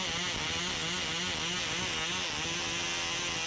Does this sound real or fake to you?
real